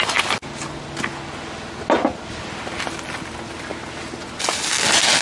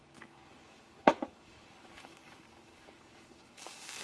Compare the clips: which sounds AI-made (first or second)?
second